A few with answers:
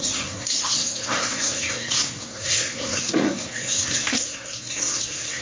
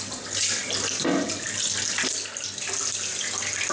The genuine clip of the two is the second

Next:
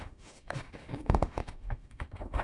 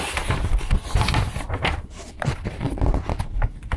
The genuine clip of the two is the second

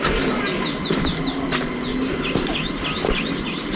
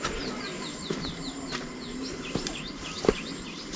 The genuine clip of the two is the first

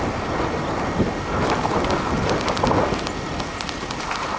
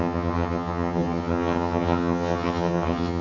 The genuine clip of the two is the first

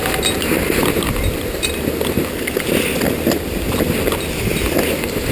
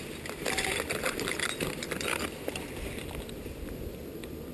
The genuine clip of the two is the first